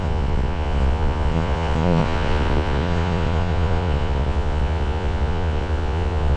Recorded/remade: remade